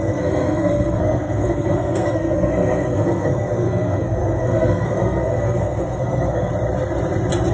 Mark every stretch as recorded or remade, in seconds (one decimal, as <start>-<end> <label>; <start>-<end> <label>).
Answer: 0.0-6.5 remade; 6.5-7.5 recorded